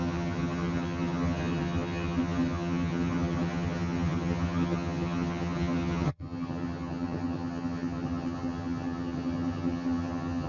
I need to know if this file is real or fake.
fake